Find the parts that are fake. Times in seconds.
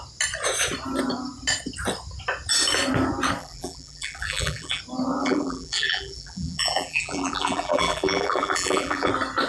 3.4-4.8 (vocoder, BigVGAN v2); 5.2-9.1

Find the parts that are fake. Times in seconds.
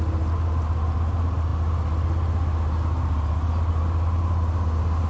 none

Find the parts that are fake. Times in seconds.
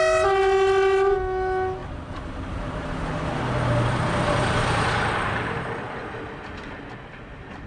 1.8-5.8 (vocoder, BigVGAN v2)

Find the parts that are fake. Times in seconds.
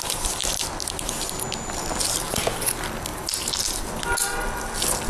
none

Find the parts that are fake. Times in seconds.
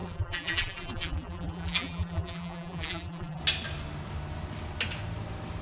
0.0-3.4 (vocoder, BigVGAN v2)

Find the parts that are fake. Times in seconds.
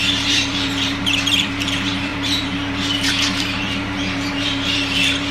0.0-5.3 (vocoder, BigVGAN v2)